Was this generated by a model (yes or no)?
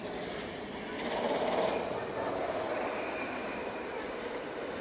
no